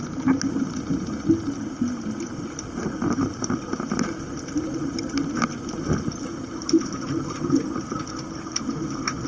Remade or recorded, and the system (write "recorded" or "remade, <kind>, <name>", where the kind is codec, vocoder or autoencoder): recorded